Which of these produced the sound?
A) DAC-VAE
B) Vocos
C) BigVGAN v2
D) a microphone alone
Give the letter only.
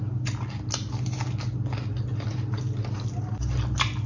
D